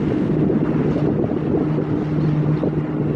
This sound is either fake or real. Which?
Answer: real